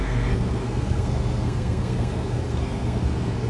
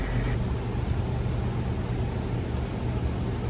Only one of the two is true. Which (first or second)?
second